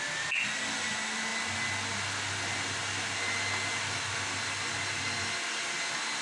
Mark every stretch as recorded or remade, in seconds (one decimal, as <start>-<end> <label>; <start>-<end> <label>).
0.0-6.2 recorded